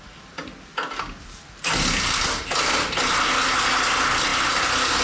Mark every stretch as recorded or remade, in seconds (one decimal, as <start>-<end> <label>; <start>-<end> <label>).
0.0-5.0 recorded